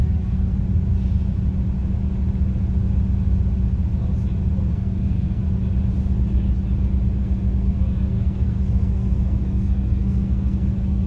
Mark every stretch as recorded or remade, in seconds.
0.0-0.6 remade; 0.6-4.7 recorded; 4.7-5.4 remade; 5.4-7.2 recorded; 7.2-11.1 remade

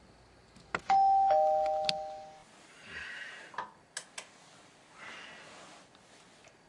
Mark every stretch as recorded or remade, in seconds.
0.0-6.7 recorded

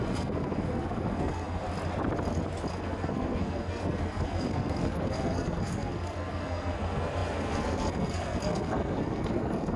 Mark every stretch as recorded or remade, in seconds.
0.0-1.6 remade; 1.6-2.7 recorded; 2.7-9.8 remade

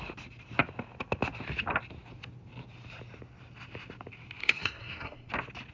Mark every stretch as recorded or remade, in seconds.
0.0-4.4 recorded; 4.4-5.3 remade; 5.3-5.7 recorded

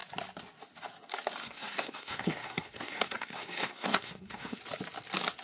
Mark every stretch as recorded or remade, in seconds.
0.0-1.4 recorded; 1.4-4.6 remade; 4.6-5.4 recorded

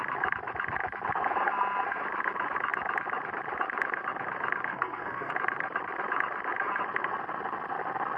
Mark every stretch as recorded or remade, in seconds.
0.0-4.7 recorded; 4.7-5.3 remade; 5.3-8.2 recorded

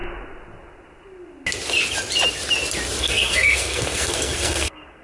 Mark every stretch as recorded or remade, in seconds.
0.0-3.0 recorded; 3.0-5.0 remade

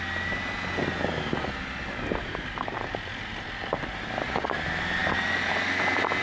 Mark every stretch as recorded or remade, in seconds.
0.0-6.2 recorded